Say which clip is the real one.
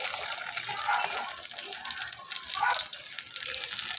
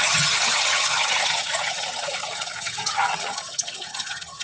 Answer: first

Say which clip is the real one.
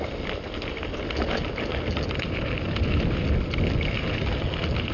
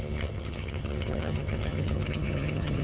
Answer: first